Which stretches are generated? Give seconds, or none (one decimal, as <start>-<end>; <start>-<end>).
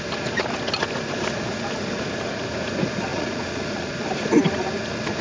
3.1-3.9